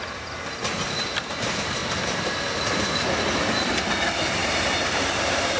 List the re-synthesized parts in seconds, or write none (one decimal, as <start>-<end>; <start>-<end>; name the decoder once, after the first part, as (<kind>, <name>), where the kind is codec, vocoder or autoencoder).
4.4-5.6 (vocoder, BigVGAN v2)